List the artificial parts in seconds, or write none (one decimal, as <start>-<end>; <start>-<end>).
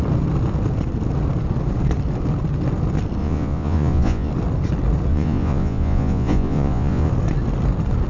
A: 3.2-4.3; 5.1-7.1